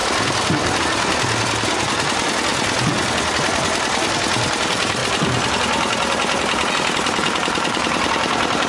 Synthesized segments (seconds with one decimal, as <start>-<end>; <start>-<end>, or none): 0.0-5.0; 6.7-8.7